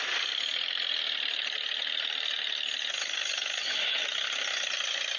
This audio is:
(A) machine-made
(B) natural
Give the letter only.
B